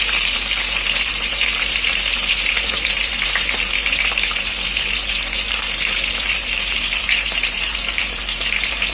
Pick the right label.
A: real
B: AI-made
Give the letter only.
B